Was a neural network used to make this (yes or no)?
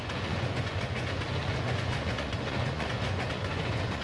yes